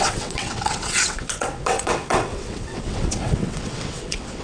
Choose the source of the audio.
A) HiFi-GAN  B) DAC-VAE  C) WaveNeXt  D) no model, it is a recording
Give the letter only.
C